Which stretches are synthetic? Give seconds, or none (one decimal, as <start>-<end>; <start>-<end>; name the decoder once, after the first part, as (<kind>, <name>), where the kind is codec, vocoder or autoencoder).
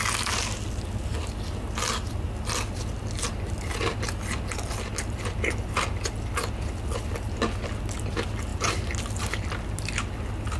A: none